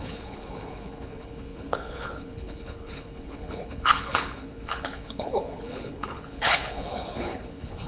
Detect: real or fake fake